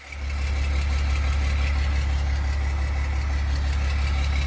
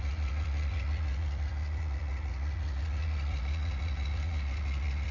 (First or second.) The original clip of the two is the first